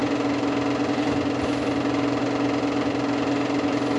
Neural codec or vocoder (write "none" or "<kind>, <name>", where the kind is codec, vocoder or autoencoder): none